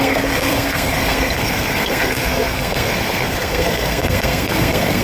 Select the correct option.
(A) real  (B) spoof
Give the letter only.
B